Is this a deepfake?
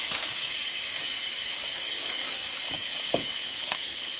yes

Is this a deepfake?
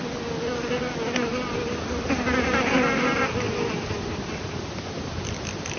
no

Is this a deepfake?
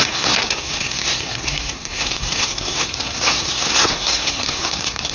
yes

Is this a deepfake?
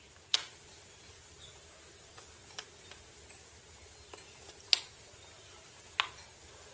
no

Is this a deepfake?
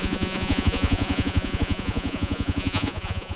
yes